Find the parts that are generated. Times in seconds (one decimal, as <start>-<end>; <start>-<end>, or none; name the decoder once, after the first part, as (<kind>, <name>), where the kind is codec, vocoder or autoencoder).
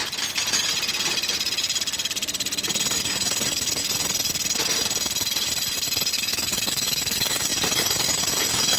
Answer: 3.0-3.8 (codec, DAC); 6.1-8.8